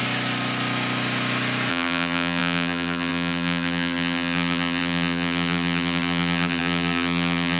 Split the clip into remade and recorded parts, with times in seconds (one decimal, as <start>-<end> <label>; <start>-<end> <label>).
0.0-1.7 recorded; 1.7-7.6 remade